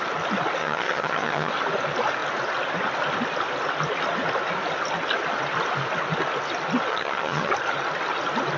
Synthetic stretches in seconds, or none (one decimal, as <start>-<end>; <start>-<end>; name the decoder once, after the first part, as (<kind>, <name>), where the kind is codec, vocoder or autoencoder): 0.6-1.5 (vocoder, HiFi-GAN); 6.9-7.5